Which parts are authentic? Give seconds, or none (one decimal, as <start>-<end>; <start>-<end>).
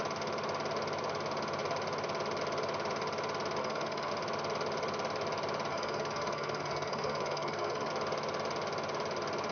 0.0-3.6; 4.1-5.7; 7.9-9.5